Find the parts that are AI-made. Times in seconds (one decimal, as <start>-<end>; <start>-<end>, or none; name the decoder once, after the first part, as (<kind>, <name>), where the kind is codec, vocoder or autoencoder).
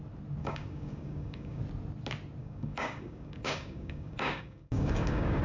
0.4-1.6 (codec, DAC); 2.4-5.4